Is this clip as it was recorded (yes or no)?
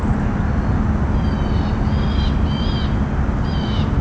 yes